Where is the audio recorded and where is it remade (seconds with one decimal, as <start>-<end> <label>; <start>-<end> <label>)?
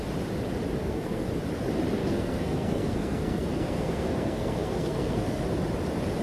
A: 0.0-0.8 recorded; 0.8-1.3 remade; 1.3-2.0 recorded; 2.0-5.4 remade; 5.4-6.2 recorded